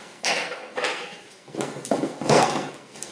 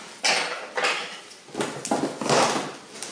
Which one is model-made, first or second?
first